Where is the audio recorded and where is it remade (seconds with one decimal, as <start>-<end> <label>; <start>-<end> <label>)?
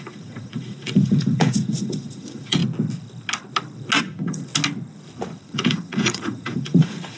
0.0-2.6 remade; 2.6-4.0 recorded; 4.0-4.5 remade; 4.5-5.4 recorded; 5.4-7.2 remade